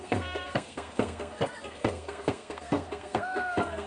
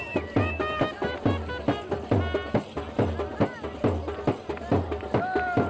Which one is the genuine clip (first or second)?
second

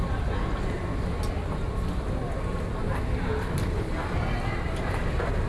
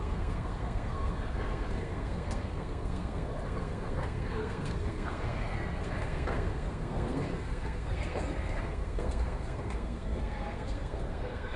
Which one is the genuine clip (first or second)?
first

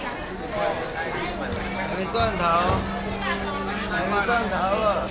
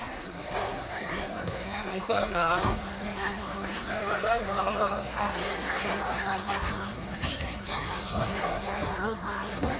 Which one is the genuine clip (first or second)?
first